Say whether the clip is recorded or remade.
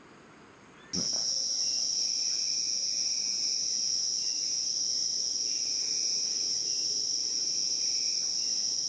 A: recorded